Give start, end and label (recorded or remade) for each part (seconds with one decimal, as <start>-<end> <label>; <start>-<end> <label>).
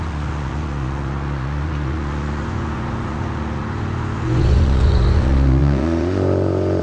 0.0-6.8 remade